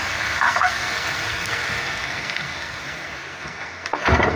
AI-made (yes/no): yes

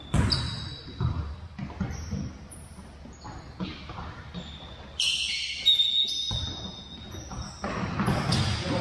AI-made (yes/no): no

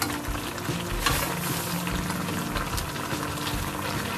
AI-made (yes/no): no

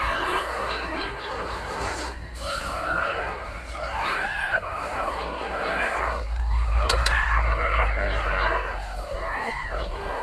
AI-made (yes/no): yes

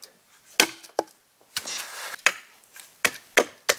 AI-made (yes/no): no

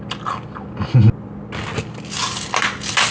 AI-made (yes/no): no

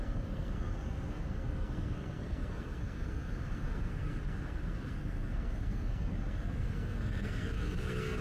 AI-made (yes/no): yes